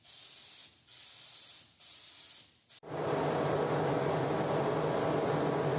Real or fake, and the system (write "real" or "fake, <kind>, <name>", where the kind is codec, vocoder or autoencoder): real